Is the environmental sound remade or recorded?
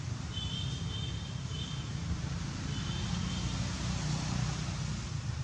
recorded